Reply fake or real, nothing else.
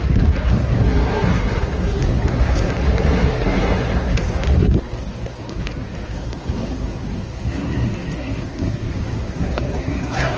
fake